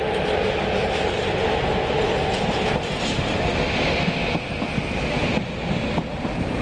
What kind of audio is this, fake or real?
real